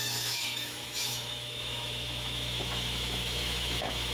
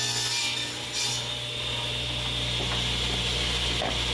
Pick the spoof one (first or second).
first